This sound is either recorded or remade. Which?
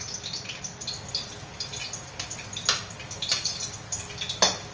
recorded